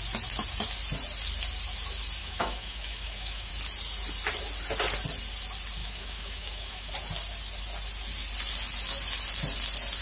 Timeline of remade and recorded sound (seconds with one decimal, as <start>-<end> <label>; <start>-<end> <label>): 0.0-2.2 recorded; 2.2-3.5 remade; 3.5-5.8 recorded; 5.8-6.9 remade; 6.9-10.0 recorded

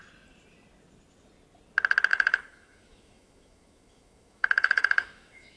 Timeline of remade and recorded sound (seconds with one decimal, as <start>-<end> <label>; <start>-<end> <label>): 0.0-2.1 recorded; 2.1-5.6 remade

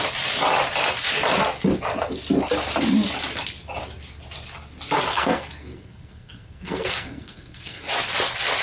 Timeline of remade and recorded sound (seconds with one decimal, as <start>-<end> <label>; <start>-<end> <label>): 0.0-5.1 recorded; 5.1-7.8 remade; 7.8-8.6 recorded

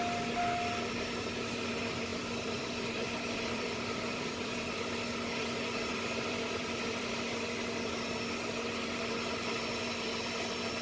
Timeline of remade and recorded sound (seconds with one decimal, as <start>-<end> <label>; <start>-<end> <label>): 0.0-2.1 recorded; 2.1-4.8 remade; 4.8-5.9 recorded; 5.9-7.1 remade; 7.1-10.8 recorded

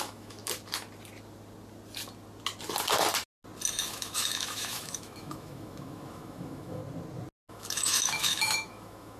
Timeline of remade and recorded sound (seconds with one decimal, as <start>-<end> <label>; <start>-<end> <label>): 0.0-0.4 remade; 0.4-3.7 recorded; 3.7-6.8 remade; 6.8-7.5 recorded; 7.5-9.2 remade